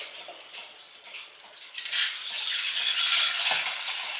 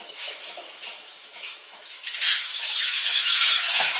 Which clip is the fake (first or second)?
second